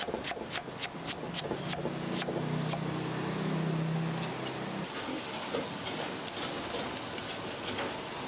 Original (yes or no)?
yes